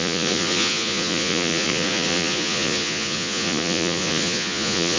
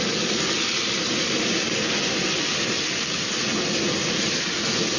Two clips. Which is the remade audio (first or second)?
first